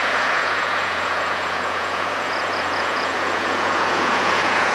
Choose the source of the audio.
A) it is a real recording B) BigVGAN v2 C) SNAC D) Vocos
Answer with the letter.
D